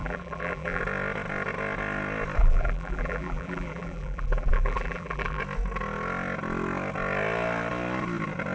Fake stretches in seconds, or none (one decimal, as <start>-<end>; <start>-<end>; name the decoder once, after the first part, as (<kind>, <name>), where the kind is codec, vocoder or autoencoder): 0.0-0.8 (vocoder, BigVGAN v2); 2.4-5.4